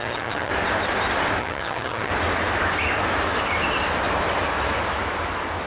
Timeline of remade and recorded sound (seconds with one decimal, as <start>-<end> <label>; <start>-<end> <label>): 0.0-0.5 remade; 0.5-1.4 recorded; 1.4-2.1 remade; 2.1-5.7 recorded